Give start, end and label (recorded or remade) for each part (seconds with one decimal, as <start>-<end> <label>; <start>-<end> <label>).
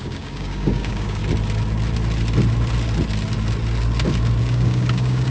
0.0-1.2 remade; 1.2-4.4 recorded; 4.4-5.3 remade